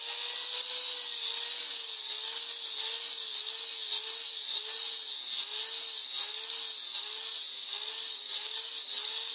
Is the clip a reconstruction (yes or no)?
no